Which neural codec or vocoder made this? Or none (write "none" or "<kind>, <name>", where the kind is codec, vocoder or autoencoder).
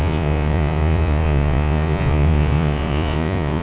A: vocoder, Vocos